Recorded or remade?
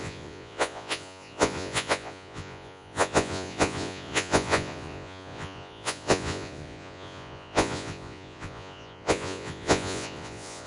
remade